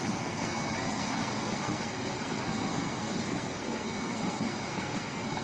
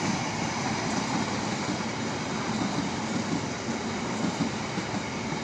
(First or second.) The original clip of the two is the second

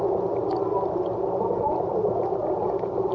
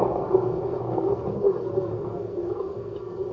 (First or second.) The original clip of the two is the first